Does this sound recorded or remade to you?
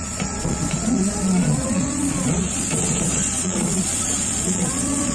remade